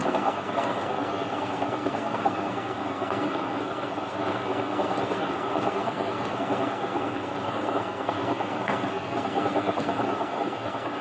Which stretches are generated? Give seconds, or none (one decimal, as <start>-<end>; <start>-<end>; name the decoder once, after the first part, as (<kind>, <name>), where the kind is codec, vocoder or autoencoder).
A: 0.0-11.0 (codec, SNAC)